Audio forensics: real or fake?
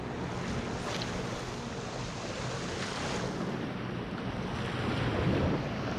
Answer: real